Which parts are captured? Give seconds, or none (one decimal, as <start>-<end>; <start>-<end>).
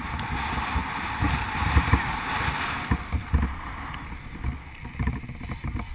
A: 0.0-5.9